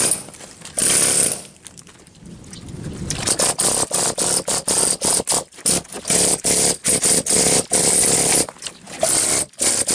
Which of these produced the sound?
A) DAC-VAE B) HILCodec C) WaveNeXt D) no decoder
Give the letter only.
D